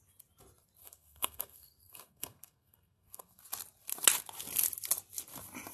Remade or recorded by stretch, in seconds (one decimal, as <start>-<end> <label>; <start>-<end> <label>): 0.0-0.8 recorded; 0.8-3.4 remade; 3.4-5.7 recorded